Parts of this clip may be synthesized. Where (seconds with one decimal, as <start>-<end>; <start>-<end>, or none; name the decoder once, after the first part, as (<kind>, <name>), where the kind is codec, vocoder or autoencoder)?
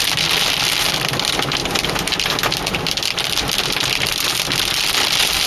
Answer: none